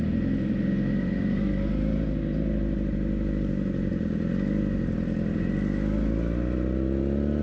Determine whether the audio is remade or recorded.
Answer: recorded